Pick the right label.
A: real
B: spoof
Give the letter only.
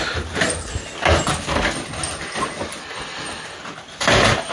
A